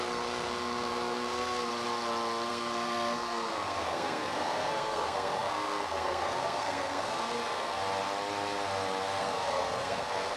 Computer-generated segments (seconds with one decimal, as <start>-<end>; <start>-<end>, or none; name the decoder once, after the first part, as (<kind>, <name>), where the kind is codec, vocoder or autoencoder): 0.0-1.7 (codec, SNAC); 2.5-7.8; 9.2-10.4